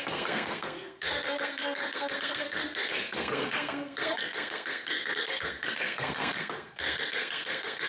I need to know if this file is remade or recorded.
remade